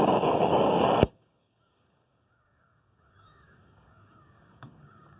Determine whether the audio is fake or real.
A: fake